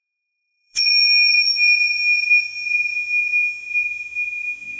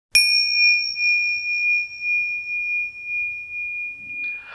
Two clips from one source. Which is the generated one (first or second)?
first